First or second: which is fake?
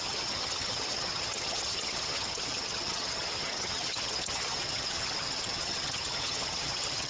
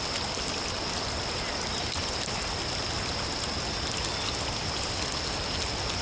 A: first